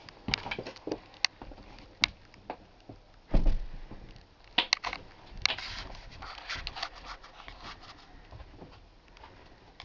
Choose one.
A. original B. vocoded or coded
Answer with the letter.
A